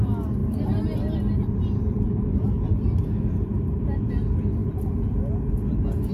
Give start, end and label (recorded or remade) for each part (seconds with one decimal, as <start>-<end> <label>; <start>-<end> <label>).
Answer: 0.0-0.4 recorded; 0.4-4.1 remade; 4.1-6.1 recorded